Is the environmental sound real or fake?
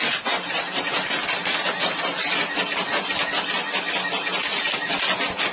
real